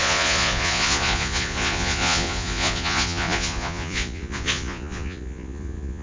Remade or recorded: remade